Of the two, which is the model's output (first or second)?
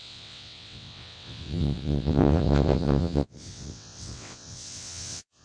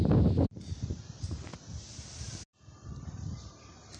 first